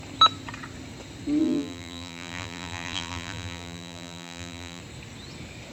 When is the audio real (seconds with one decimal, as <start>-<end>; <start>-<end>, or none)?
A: 0.0-1.4; 4.8-5.7